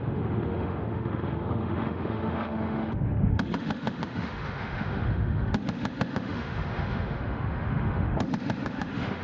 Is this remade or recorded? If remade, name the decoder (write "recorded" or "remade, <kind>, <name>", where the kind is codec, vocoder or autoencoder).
remade, autoencoder, DAC-VAE